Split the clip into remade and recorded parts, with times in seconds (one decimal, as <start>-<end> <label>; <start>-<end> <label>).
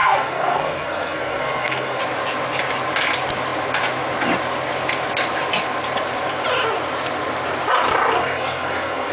0.0-2.0 remade; 2.0-8.2 recorded; 8.2-9.1 remade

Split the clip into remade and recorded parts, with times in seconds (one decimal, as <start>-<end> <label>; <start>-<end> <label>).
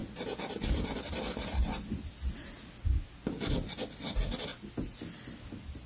0.0-5.9 recorded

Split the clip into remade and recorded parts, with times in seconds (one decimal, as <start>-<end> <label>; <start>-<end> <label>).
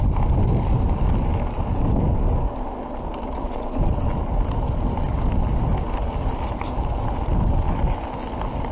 0.0-8.7 recorded